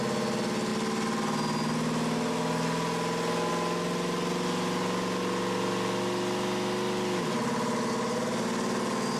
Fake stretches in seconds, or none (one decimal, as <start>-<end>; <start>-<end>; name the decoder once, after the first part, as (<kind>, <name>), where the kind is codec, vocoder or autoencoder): none